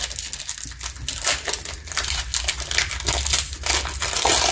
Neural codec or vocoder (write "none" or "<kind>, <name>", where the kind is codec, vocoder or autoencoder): none